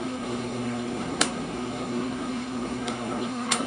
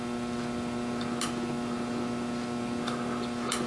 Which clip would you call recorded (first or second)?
second